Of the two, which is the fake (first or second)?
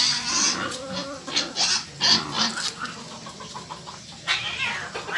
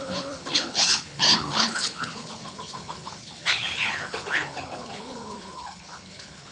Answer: second